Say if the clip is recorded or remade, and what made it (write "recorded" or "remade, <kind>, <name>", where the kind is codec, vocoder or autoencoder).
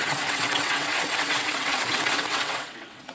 remade, vocoder, WaveNeXt